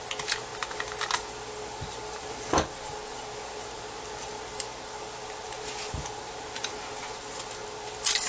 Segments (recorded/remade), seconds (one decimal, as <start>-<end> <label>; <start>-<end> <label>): 0.0-8.3 recorded